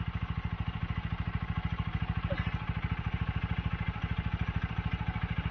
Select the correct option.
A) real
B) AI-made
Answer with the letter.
A